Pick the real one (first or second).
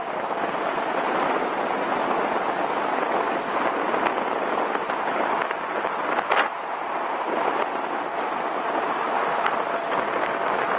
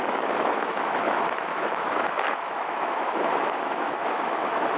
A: first